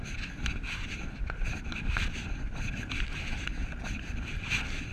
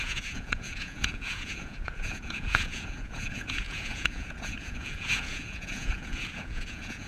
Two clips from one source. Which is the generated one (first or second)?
second